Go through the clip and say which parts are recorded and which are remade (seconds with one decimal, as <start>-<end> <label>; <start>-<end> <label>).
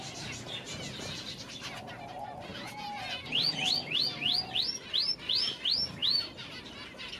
0.0-2.5 recorded; 2.5-3.6 remade; 3.6-7.2 recorded